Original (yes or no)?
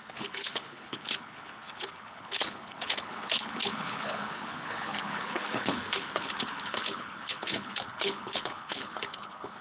no